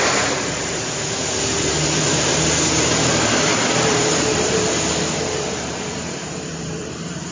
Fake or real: fake